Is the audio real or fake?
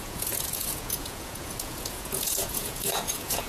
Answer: fake